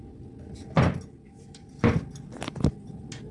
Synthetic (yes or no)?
no